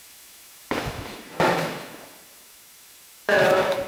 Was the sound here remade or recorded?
remade